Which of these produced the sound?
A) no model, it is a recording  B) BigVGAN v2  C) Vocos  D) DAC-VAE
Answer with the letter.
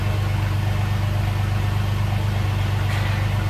A